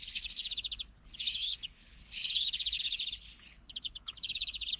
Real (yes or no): no